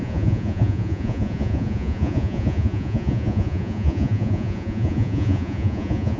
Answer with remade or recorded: remade